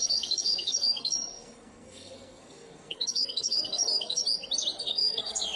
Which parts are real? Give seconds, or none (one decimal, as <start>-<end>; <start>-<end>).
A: 4.2-4.8